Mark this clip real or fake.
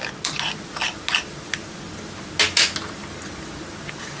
real